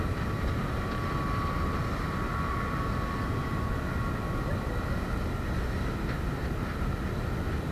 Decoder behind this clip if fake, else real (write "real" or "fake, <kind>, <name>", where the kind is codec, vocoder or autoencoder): real